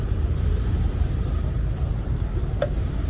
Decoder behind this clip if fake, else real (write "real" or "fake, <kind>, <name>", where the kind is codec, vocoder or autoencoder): fake, vocoder, BigVGAN v2